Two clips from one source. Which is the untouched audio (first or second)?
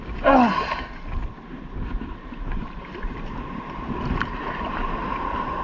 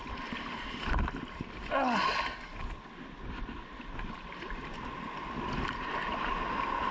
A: second